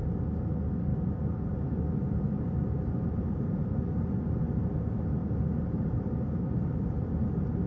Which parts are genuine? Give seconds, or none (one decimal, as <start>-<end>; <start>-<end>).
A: 0.0-0.9; 4.1-5.2; 7.1-7.7